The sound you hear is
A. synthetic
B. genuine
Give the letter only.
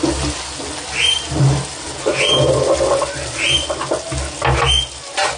B